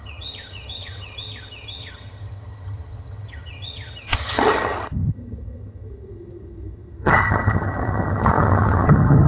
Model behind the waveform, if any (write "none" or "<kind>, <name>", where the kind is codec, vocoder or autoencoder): vocoder, HiFi-GAN